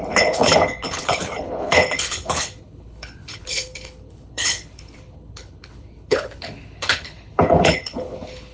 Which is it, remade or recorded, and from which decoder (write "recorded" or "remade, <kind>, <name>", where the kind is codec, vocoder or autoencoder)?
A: remade, codec, HILCodec